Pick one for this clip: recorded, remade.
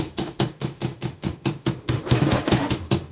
remade